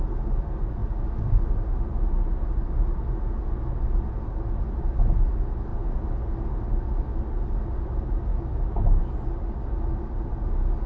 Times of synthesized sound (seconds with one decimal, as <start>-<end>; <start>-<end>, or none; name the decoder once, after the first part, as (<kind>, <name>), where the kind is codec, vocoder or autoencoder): 8.3-9.0 (autoencoder, DAC-VAE)